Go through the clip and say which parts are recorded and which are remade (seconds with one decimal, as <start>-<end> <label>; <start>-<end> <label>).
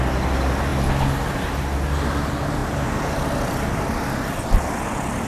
0.0-5.3 recorded